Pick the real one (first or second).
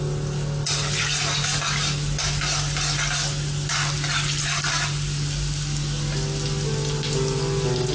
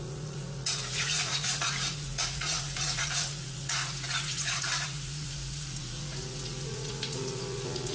first